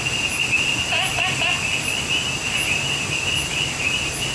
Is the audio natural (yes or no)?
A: yes